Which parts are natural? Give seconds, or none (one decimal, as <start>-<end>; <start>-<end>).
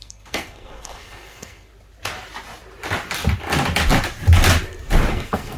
1.7-5.1